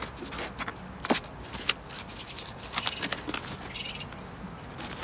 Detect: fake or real real